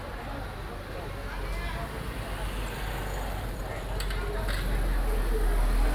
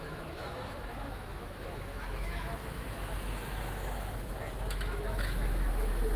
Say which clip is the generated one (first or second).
second